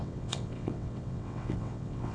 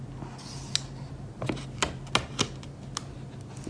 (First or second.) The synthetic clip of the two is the first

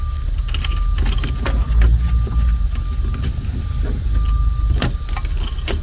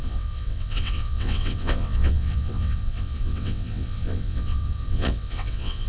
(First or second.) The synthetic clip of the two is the second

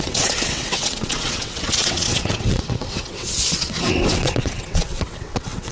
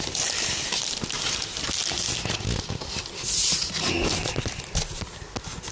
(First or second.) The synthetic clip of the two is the first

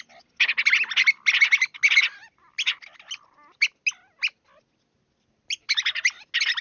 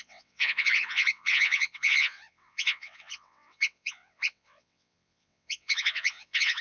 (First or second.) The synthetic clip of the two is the second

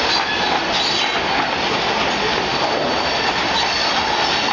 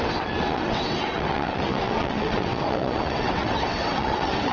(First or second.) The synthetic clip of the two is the second